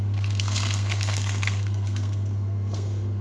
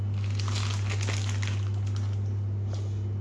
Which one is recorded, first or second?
second